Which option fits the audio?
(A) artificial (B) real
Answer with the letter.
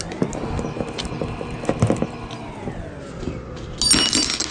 B